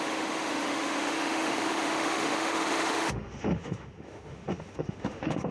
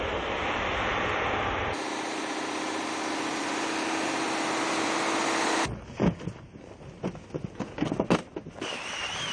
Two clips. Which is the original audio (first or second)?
second